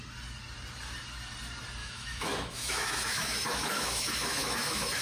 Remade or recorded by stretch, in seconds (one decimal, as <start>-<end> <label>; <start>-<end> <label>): 0.0-1.8 recorded; 1.8-5.0 remade